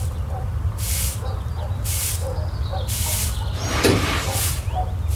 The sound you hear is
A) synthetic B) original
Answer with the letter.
B